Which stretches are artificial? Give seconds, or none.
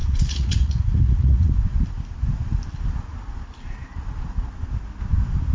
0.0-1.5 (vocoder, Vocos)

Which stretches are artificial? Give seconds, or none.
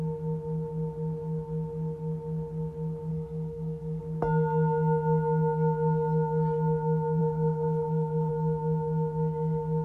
3.1-4.0 (codec, SNAC); 7.2-8.3